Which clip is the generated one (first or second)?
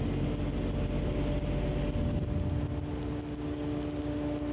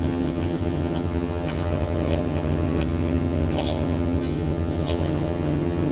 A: second